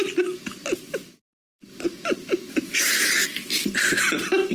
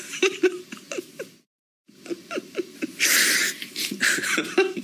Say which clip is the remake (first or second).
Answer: second